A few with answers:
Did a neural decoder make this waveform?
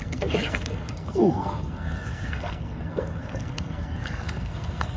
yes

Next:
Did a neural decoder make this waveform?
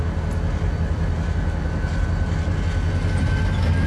no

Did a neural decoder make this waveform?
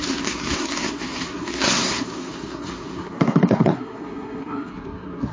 yes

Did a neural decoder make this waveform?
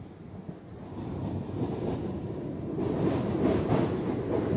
no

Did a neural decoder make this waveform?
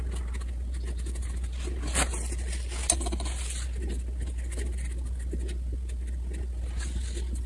no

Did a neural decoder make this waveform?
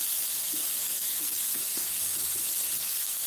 yes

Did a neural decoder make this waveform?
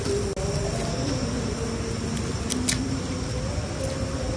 no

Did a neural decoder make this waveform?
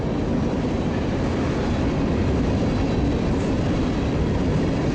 no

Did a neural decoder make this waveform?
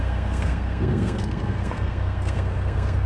yes